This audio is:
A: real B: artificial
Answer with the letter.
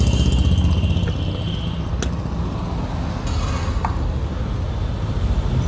A